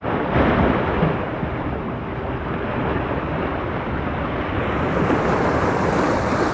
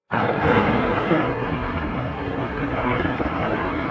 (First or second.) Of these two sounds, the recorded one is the first